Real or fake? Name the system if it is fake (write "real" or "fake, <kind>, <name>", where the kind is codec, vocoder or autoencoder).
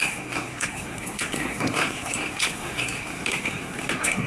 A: fake, codec, SNAC